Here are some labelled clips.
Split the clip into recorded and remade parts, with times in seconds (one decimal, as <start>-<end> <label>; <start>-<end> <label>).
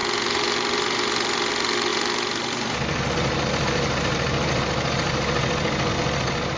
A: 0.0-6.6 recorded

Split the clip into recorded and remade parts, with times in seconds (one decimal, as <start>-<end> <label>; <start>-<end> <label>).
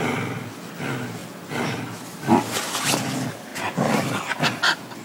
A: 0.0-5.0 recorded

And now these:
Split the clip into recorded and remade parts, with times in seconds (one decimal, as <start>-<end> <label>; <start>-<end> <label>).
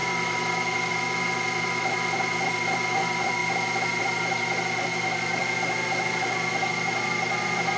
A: 0.0-3.4 remade; 3.4-4.0 recorded; 4.0-5.4 remade; 5.4-6.6 recorded; 6.6-7.8 remade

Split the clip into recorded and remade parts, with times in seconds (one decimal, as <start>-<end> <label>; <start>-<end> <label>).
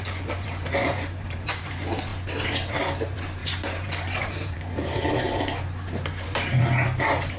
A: 0.0-0.8 recorded; 0.8-1.7 remade; 1.7-3.4 recorded; 3.4-5.1 remade; 5.1-7.4 recorded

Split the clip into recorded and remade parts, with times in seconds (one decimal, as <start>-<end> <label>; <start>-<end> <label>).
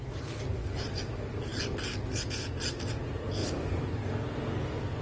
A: 0.0-0.6 recorded; 0.6-1.1 remade; 1.1-3.4 recorded; 3.4-4.1 remade; 4.1-5.0 recorded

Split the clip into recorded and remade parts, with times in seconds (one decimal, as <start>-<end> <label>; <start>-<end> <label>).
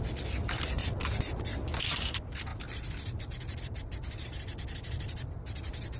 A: 0.0-0.8 recorded; 0.8-1.9 remade; 1.9-2.5 recorded; 2.5-3.6 remade; 3.6-6.0 recorded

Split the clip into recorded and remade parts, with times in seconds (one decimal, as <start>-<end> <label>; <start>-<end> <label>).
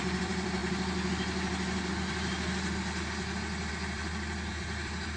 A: 0.0-0.6 remade; 0.6-3.7 recorded; 3.7-5.2 remade